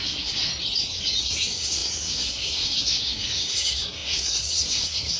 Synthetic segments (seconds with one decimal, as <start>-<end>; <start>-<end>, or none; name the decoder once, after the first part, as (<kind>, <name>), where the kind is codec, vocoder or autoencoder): 0.0-0.5 (codec, SNAC); 1.2-5.2